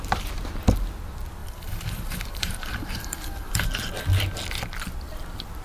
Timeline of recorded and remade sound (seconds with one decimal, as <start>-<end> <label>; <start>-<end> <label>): 0.0-1.4 recorded; 1.4-3.7 remade; 3.7-5.6 recorded